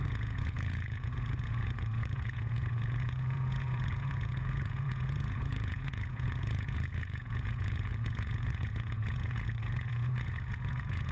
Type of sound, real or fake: fake